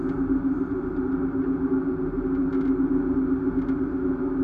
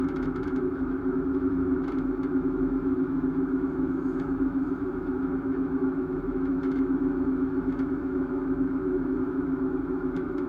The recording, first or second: first